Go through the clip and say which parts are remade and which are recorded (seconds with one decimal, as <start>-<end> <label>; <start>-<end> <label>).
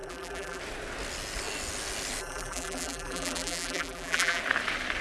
0.0-0.6 remade; 0.6-2.2 recorded; 2.2-4.4 remade; 4.4-5.0 recorded